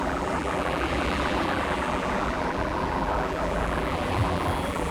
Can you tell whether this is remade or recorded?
remade